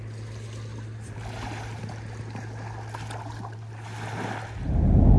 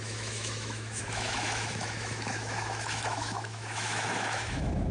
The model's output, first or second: second